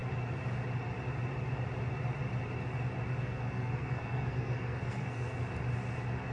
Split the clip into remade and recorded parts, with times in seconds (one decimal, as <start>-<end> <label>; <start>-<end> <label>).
0.0-3.2 recorded; 3.2-5.4 remade; 5.4-6.3 recorded